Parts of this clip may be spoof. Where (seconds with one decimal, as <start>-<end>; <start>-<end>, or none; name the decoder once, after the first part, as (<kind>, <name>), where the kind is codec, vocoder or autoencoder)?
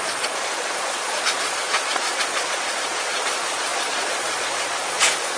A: 0.0-5.4 (vocoder, Vocos)